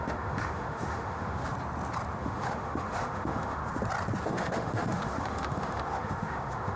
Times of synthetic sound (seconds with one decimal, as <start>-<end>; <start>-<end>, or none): 0.0-1.4; 2.2-3.6; 4.2-6.8